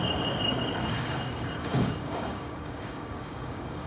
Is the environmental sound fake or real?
fake